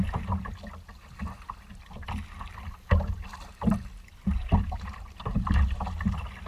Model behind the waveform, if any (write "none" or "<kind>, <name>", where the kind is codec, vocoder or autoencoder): none